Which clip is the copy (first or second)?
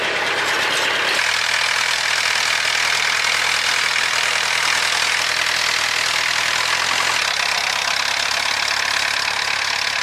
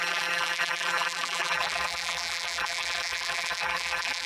second